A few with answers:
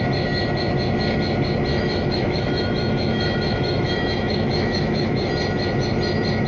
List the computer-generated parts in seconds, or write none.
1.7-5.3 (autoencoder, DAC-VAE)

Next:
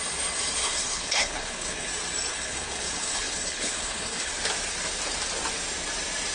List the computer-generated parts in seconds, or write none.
0.6-1.9 (codec, HILCodec); 2.3-4.3

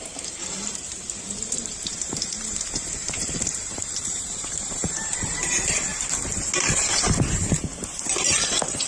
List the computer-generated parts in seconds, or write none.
0.0-5.9 (vocoder, BigVGAN v2); 7.8-8.9

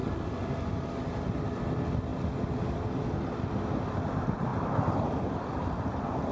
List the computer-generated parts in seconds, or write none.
4.5-5.7 (vocoder, BigVGAN v2)

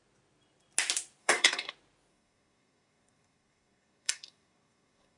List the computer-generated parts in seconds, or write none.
1.2-1.7 (codec, SNAC); 2.1-5.2